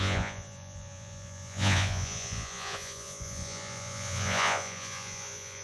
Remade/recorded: remade